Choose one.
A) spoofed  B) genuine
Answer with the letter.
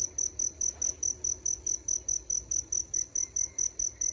B